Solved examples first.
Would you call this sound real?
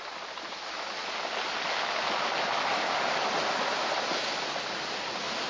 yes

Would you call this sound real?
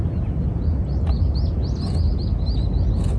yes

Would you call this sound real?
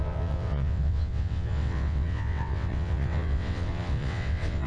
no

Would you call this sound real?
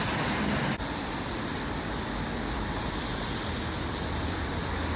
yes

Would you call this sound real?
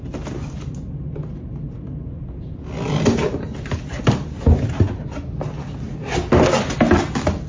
yes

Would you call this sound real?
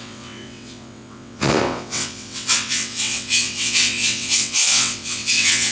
no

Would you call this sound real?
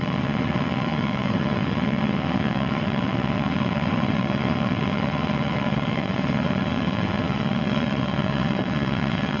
no